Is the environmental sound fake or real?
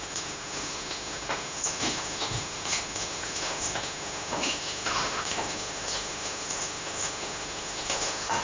fake